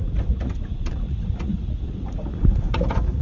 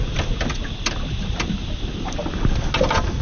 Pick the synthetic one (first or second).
first